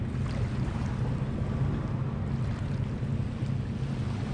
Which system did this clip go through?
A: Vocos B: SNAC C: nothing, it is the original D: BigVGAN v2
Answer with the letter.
C